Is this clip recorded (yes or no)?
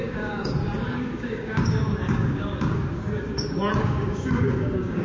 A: no